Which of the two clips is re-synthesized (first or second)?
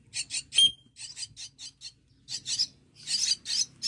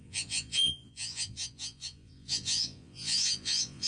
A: second